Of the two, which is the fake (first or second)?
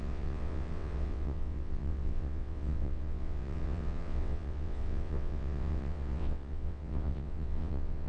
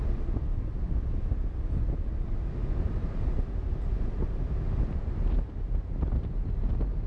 first